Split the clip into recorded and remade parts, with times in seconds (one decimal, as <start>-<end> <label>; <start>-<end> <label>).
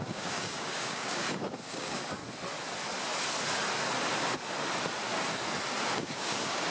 0.0-2.2 remade; 2.2-5.9 recorded; 5.9-6.7 remade